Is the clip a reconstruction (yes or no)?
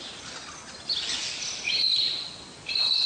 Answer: no